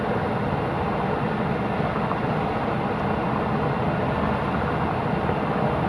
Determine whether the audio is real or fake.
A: real